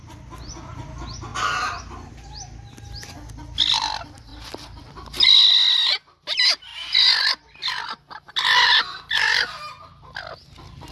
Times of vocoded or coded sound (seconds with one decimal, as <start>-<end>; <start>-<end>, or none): none